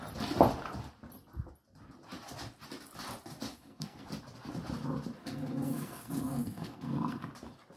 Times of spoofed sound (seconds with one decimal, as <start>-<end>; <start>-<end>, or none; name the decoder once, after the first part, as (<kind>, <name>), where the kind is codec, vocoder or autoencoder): 3.5-4.1 (codec, SNAC); 5.2-7.3

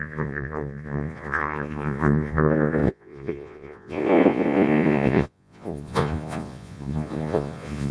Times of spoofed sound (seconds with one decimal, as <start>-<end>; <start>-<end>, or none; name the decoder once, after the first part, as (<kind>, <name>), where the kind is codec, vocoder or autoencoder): 0.0-7.9 (vocoder, Vocos)

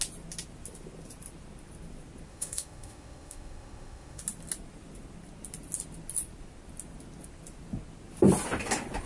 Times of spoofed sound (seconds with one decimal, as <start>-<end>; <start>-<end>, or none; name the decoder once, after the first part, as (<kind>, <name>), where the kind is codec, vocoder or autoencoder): 2.3-4.2 (autoencoder, DAC-VAE)

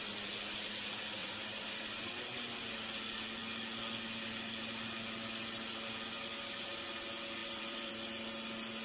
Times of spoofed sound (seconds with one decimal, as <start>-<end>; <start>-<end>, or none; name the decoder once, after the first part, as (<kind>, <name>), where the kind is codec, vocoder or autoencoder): 1.2-2.2 (vocoder, BigVGAN v2); 7.4-7.9